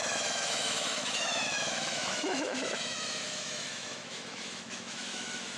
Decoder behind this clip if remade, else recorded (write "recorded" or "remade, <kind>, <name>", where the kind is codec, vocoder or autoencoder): remade, autoencoder, DAC-VAE